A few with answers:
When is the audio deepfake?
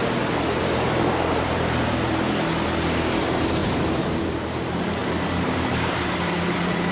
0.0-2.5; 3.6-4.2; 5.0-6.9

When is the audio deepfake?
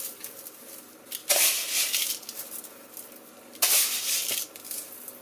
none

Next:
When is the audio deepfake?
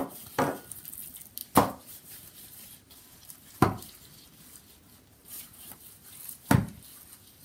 1.4-4.0; 5.2-5.8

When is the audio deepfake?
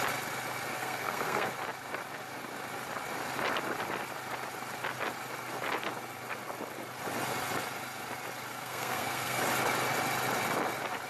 0.8-1.5; 8.5-9.4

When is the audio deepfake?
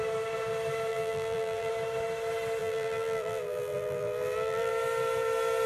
0.9-1.7; 2.6-4.7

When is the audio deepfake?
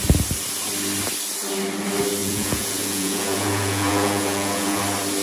2.2-4.8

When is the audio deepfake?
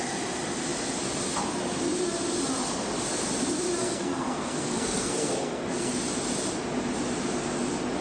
3.8-6.0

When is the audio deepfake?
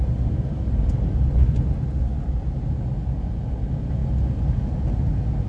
none